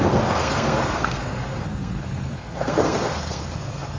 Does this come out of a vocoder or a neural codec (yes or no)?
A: yes